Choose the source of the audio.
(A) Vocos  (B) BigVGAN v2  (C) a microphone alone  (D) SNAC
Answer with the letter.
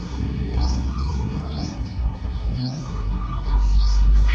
D